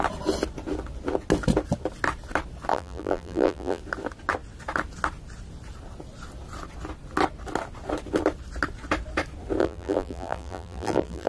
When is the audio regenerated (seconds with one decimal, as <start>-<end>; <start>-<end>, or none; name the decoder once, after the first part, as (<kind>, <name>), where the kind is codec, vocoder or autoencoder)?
2.7-3.8 (vocoder, BigVGAN v2); 9.6-11.3